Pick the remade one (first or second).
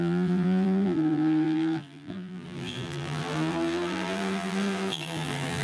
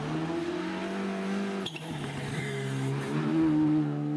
first